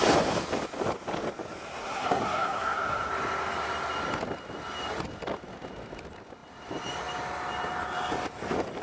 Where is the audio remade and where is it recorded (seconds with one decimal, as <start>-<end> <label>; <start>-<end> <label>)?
0.0-1.8 recorded; 1.8-3.1 remade; 3.1-8.8 recorded